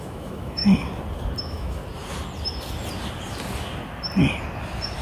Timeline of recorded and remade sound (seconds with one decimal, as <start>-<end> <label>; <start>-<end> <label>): 0.0-0.6 remade; 0.6-1.4 recorded; 1.4-1.8 remade; 1.8-5.0 recorded